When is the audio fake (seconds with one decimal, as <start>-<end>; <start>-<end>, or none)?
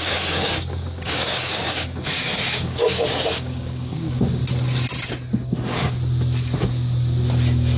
0.0-4.4